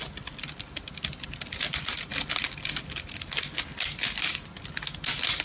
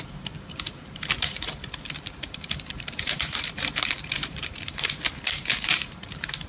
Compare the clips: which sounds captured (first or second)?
first